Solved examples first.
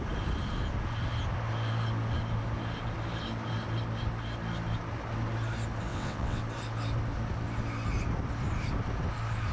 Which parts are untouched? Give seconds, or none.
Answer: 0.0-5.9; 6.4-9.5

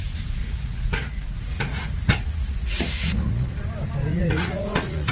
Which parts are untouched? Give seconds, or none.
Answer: 0.0-0.4; 3.5-4.1

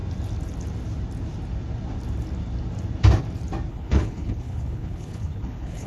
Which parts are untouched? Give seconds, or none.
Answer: 0.0-3.7

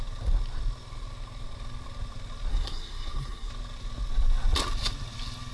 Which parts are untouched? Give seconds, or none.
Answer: 0.0-2.5; 3.5-5.5